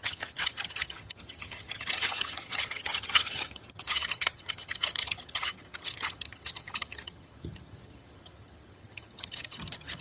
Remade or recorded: remade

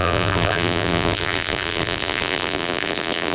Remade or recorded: remade